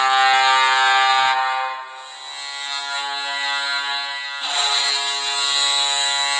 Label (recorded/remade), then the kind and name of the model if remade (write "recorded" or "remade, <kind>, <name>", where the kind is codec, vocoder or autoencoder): recorded